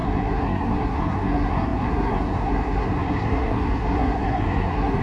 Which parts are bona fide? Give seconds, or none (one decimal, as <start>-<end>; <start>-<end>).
none